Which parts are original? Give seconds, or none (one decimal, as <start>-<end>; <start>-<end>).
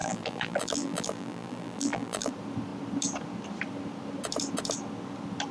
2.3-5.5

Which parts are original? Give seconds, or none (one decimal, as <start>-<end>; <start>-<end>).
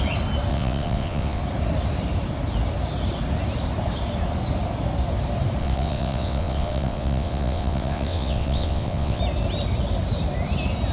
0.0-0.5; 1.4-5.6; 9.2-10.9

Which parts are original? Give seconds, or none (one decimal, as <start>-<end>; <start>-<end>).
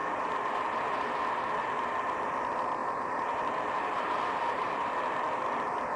1.1-2.8; 4.9-6.0